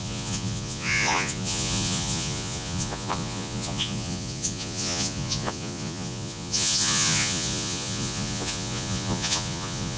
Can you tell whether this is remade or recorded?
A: remade